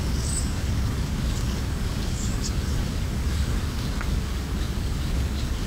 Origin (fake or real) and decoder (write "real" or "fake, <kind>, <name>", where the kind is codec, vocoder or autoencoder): fake, codec, DAC